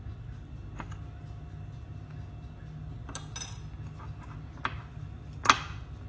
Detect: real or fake real